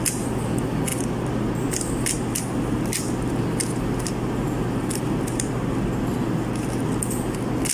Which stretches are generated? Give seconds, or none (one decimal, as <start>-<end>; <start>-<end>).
none